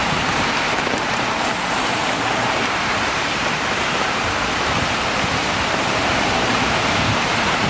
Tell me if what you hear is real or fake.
fake